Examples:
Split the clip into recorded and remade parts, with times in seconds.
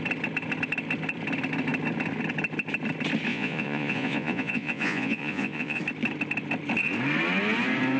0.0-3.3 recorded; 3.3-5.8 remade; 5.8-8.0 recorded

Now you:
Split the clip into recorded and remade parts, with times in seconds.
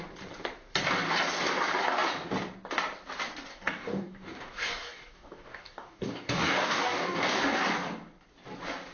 0.0-3.5 recorded; 3.5-7.4 remade; 7.4-8.9 recorded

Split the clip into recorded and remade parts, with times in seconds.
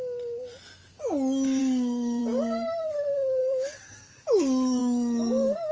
0.0-1.6 recorded; 1.6-2.2 remade; 2.2-3.4 recorded; 3.4-4.0 remade; 4.0-4.8 recorded; 4.8-5.7 remade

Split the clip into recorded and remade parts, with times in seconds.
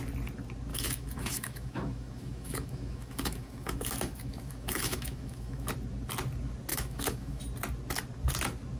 0.0-0.7 recorded; 0.7-5.7 remade; 5.7-6.7 recorded; 6.7-7.4 remade; 7.4-8.8 recorded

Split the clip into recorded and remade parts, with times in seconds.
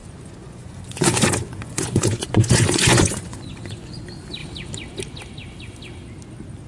0.0-4.0 remade; 4.0-6.7 recorded